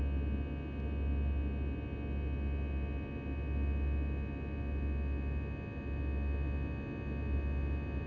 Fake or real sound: real